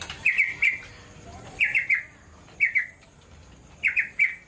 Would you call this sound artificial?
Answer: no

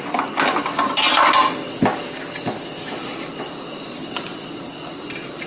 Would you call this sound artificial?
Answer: no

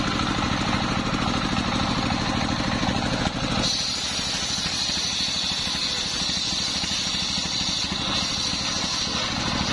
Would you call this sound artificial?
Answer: no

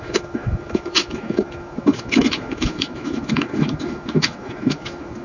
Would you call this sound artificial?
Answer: yes